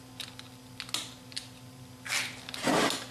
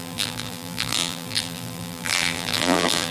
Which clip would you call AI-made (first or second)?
second